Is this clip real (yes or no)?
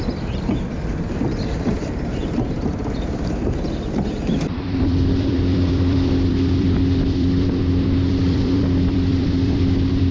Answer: no